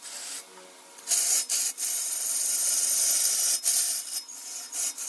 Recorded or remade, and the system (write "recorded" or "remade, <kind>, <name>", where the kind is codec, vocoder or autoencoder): recorded